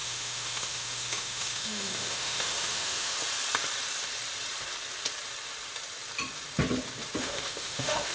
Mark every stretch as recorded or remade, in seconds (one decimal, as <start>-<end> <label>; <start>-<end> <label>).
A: 0.0-3.2 remade; 3.2-7.2 recorded; 7.2-8.1 remade